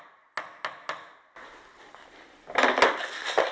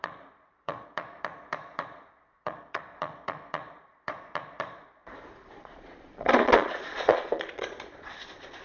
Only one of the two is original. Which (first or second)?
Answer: first